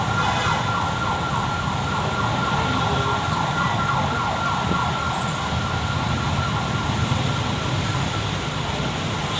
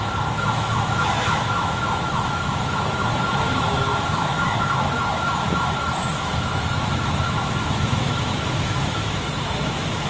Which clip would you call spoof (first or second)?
second